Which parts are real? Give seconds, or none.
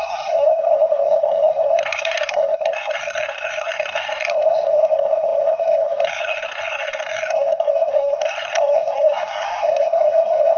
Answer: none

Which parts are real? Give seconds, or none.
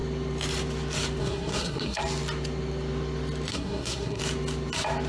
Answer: 0.0-1.2; 2.0-3.5; 4.2-5.1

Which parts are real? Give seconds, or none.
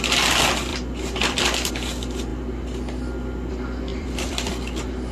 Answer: 0.0-0.7; 1.7-3.9; 4.5-5.1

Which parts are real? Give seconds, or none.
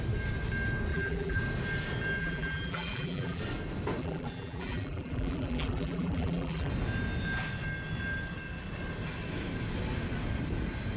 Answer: 0.0-0.9; 1.4-2.2; 3.4-4.0; 6.7-11.0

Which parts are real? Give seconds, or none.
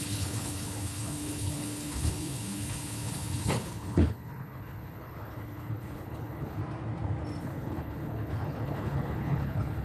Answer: 6.6-7.4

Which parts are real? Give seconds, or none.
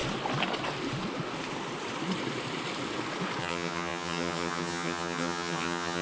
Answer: 0.0-3.4